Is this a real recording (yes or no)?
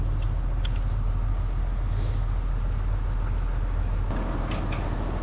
yes